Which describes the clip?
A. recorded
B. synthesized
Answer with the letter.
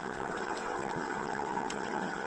B